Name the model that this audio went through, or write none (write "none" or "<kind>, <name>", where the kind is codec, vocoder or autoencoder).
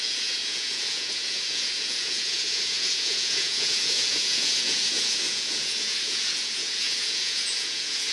vocoder, Vocos